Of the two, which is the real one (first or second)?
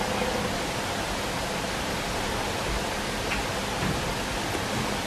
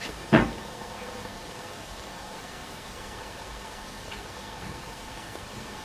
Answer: first